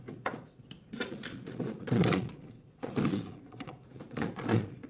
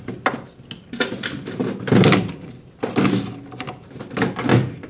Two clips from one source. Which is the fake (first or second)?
first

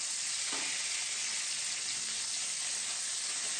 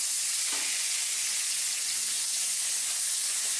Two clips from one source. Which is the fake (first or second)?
second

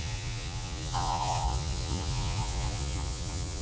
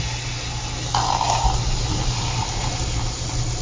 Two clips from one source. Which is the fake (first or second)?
first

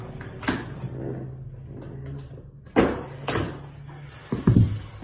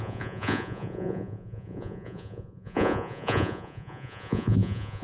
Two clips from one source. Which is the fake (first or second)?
second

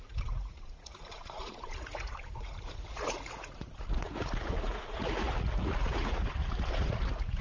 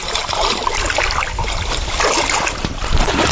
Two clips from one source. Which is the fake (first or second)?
first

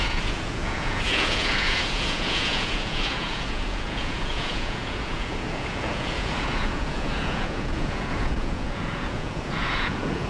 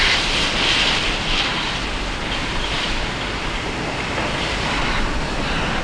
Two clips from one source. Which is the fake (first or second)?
first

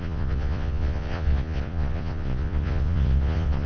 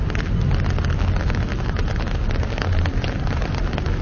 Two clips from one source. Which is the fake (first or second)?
first